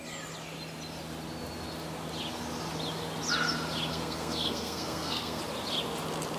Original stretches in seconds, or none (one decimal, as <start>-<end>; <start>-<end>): 0.0-3.9; 5.4-6.4